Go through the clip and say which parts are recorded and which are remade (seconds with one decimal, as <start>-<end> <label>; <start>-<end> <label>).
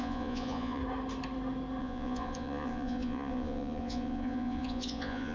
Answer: 0.0-0.8 remade; 0.8-1.8 recorded; 1.8-5.3 remade